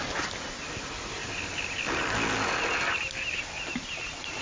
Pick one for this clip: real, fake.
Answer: real